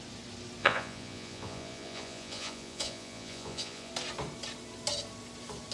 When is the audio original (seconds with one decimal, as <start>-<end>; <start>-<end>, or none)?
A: 0.0-0.6; 3.9-5.7